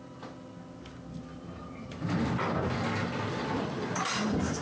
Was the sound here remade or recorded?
recorded